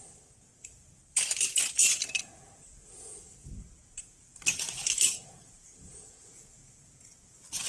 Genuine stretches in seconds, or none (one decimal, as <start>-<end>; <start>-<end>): 0.5-2.2; 4.3-5.4; 6.6-7.7